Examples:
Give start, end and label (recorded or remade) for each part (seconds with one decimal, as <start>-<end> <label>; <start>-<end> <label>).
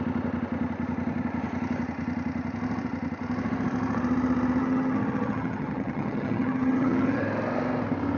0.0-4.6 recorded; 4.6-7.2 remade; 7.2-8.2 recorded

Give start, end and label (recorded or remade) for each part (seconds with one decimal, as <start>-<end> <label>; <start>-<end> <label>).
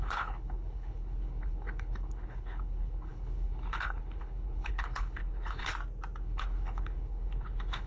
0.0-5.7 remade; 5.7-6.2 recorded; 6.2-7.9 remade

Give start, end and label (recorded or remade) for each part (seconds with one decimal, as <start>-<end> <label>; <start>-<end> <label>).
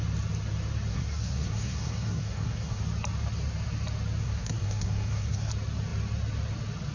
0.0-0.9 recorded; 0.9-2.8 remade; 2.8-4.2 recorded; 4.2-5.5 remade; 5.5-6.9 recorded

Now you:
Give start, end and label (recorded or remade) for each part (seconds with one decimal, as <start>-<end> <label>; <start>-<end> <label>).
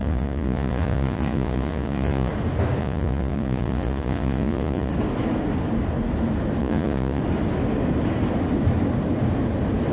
0.0-2.3 remade; 2.3-2.8 recorded; 2.8-4.9 remade; 4.9-6.6 recorded; 6.6-7.2 remade; 7.2-9.9 recorded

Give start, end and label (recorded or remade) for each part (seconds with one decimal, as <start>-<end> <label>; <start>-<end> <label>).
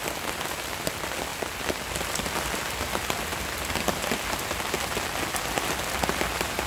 0.0-6.7 recorded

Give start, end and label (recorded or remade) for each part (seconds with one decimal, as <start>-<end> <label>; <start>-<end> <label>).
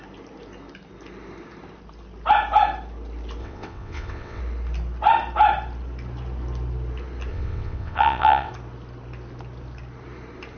0.0-3.4 recorded; 3.4-4.4 remade; 4.4-7.3 recorded; 7.3-8.5 remade; 8.5-10.6 recorded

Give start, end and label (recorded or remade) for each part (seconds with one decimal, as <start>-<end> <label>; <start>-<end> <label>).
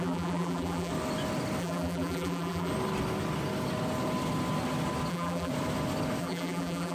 0.0-0.9 remade; 0.9-1.6 recorded; 1.6-2.7 remade; 2.7-5.1 recorded; 5.1-5.5 remade; 5.5-6.2 recorded; 6.2-6.9 remade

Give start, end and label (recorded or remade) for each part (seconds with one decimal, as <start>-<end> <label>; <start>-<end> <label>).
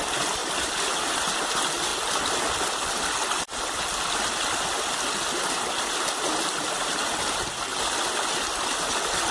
0.0-9.3 recorded